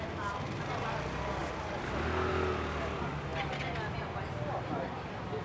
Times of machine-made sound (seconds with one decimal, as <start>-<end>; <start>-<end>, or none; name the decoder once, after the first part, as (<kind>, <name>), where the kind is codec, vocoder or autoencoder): none